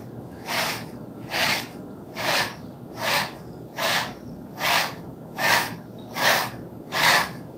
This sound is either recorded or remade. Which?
remade